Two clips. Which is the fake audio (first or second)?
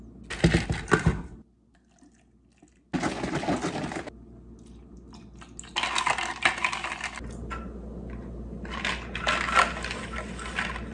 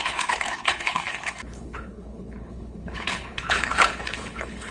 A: second